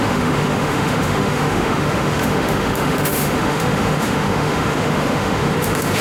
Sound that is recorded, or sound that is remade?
remade